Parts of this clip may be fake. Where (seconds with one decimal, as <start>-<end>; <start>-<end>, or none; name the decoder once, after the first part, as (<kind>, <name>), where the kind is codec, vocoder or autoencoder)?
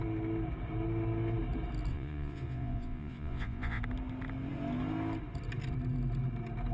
1.9-3.8 (vocoder, Vocos)